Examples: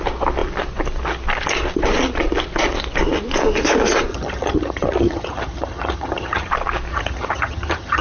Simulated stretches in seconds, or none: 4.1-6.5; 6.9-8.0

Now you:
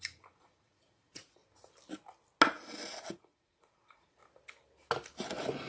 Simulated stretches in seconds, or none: 0.0-1.4; 3.1-4.2

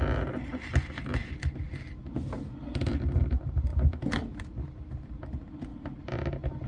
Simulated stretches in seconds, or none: none

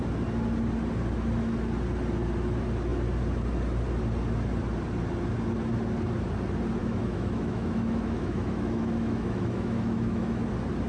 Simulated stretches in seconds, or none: 6.8-10.5

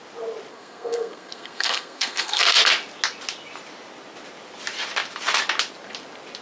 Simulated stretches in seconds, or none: 0.5-2.4